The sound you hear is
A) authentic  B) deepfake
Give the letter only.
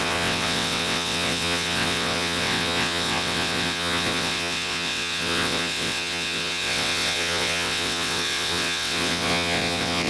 B